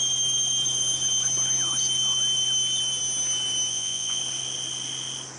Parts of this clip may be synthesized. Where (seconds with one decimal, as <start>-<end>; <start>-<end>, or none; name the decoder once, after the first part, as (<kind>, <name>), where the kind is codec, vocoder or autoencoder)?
3.7-4.2 (vocoder, Vocos)